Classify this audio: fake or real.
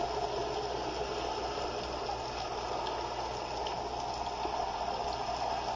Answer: real